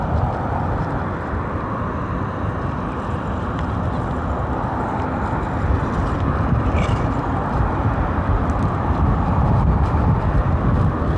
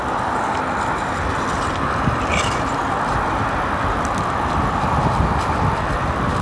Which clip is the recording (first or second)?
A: second